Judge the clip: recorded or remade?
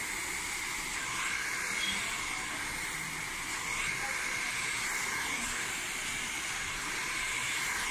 recorded